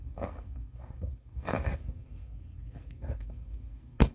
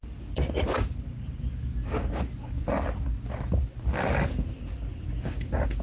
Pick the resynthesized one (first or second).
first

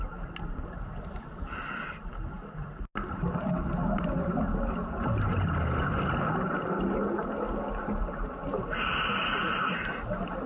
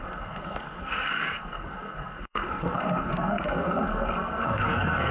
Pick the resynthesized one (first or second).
second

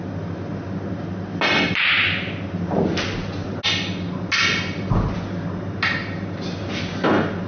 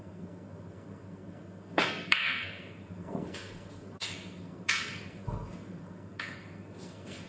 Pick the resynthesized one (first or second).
second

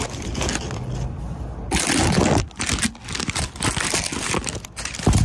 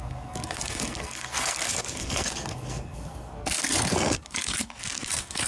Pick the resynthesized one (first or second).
second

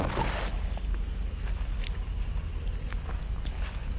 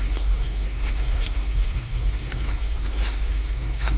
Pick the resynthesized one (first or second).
second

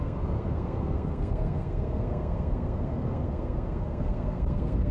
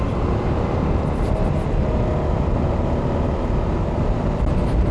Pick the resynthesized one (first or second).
first